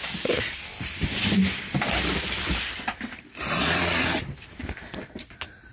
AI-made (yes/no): no